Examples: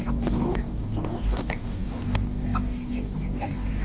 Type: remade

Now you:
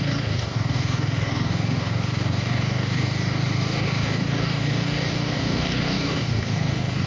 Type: remade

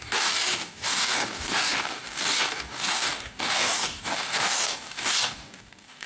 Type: remade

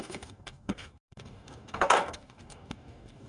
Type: remade